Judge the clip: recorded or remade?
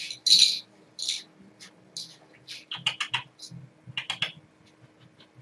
recorded